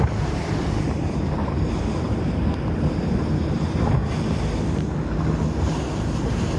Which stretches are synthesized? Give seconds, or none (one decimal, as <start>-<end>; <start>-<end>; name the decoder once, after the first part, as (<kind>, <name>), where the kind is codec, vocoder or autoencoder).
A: 0.0-4.0 (vocoder, BigVGAN v2); 5.6-6.6